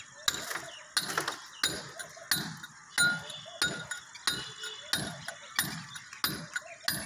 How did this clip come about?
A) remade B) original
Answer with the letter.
B